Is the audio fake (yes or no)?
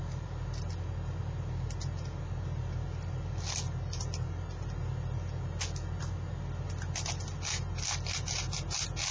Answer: no